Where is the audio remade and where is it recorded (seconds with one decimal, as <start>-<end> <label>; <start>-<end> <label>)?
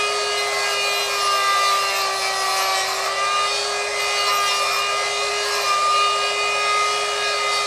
0.0-7.7 recorded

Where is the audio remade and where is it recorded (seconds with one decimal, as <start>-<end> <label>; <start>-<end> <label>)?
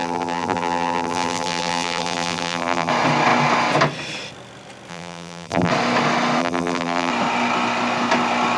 0.0-2.9 remade; 2.9-4.9 recorded; 4.9-5.7 remade; 5.7-6.4 recorded; 6.4-7.1 remade; 7.1-8.6 recorded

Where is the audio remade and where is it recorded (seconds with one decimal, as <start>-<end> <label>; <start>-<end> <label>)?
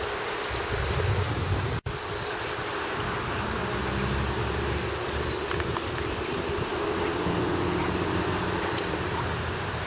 0.0-9.9 recorded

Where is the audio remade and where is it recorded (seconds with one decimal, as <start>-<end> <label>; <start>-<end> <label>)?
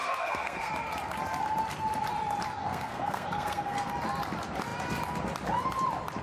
0.0-0.7 remade; 0.7-2.6 recorded; 2.6-3.9 remade; 3.9-6.2 recorded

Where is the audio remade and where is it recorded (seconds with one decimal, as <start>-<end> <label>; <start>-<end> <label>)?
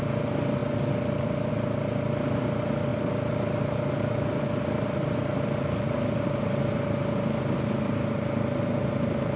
0.0-9.4 recorded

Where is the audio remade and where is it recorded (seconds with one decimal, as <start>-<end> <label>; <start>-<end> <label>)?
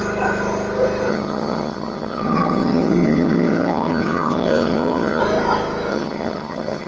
0.0-1.1 recorded; 1.1-5.2 remade; 5.2-5.9 recorded; 5.9-6.9 remade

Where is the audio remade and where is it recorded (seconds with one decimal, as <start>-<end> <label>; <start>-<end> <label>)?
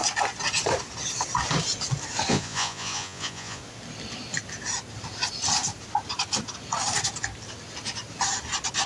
0.0-2.3 recorded; 2.3-3.6 remade; 3.6-8.9 recorded